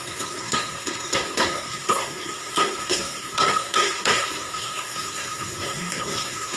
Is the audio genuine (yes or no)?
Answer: no